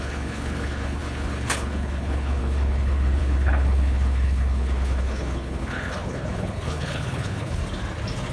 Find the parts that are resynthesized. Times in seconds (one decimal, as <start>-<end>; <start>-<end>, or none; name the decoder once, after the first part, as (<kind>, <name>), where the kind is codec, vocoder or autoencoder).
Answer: 0.0-7.6 (codec, HILCodec)

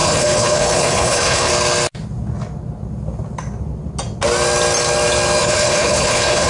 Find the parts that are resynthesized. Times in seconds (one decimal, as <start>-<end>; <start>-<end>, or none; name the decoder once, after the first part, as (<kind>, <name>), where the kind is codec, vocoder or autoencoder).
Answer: 0.0-1.5 (codec, HILCodec); 5.4-6.5